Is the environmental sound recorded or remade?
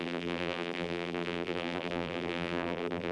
remade